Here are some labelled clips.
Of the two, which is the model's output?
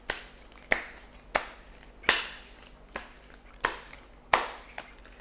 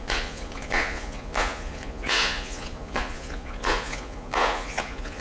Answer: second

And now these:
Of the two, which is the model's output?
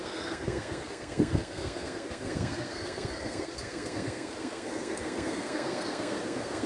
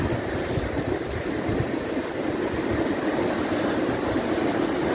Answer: first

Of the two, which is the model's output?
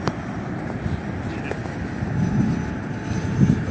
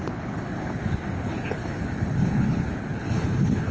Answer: second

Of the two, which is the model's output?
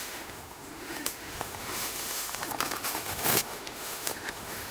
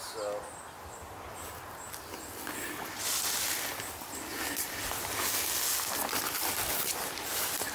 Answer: first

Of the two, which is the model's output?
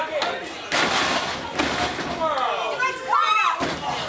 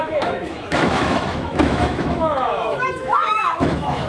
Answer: second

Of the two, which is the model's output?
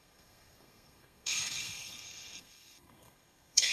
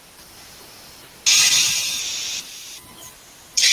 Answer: first